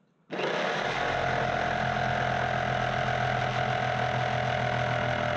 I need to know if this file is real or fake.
real